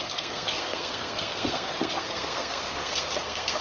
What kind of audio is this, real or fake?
fake